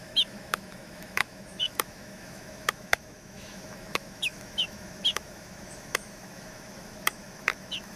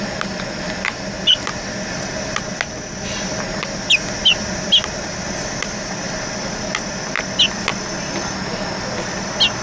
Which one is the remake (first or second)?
first